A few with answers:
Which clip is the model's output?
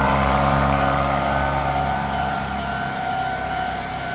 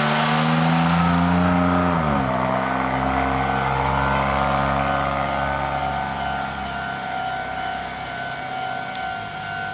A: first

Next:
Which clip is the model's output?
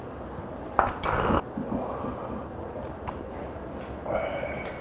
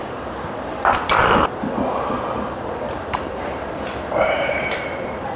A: second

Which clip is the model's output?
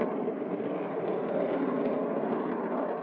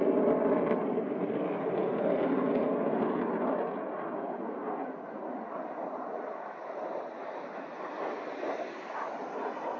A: first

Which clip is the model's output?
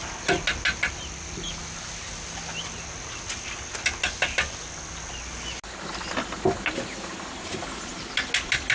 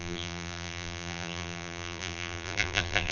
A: second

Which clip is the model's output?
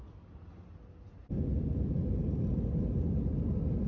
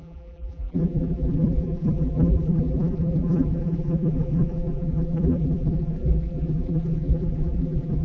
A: second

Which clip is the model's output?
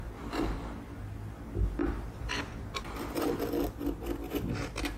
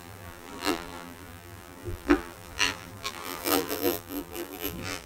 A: second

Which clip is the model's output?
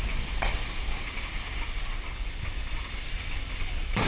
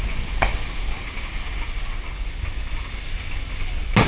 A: first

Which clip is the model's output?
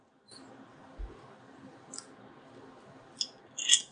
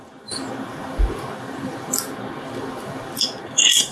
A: second